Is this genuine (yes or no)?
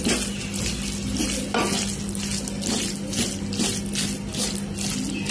yes